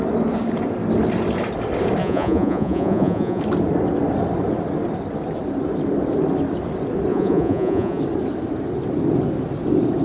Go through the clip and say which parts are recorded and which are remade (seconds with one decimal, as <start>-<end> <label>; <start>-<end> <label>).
0.0-2.0 recorded; 2.0-3.4 remade; 3.4-7.1 recorded; 7.1-8.0 remade; 8.0-10.0 recorded